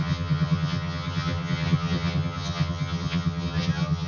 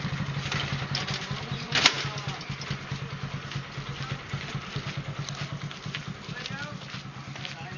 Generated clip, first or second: first